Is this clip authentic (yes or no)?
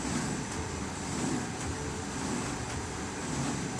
yes